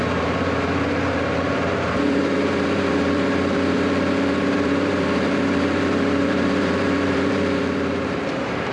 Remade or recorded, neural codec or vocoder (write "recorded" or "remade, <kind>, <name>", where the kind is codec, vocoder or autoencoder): remade, vocoder, BigVGAN v2